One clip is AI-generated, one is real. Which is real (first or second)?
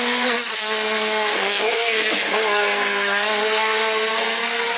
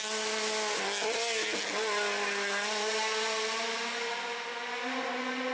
second